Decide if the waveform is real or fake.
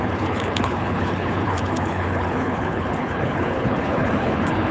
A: fake